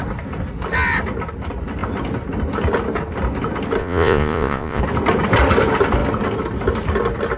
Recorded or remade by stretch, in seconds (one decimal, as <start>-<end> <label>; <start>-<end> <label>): 0.0-3.8 recorded; 3.8-4.8 remade; 4.8-7.4 recorded